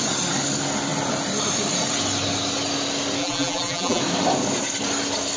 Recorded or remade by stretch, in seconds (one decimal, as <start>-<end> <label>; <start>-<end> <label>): 0.0-3.2 recorded; 3.2-4.0 remade; 4.0-5.4 recorded